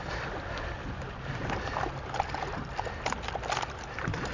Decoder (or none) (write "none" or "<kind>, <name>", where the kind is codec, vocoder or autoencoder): none